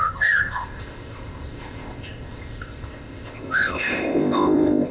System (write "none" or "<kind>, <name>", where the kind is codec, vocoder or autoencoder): codec, ZipCodec